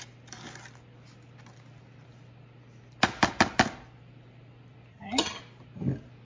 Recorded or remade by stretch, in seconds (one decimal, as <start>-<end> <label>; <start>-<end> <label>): 0.0-4.9 recorded; 4.9-5.4 remade; 5.4-6.2 recorded